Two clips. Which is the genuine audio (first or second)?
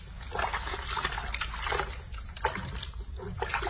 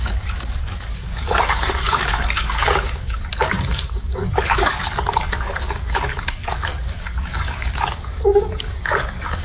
first